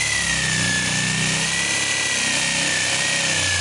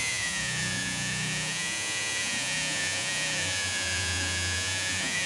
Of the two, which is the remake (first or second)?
second